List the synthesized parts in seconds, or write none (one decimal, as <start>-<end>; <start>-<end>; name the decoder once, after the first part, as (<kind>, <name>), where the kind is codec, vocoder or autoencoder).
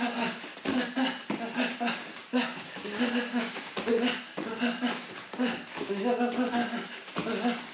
0.0-0.5 (codec, DAC); 1.9-6.6